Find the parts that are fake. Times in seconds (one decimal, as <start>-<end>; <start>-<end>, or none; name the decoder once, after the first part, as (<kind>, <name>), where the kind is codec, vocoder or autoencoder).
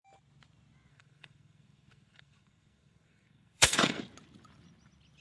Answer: 0.9-4.0 (codec, SNAC)